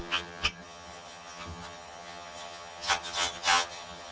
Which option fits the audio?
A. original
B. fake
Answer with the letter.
B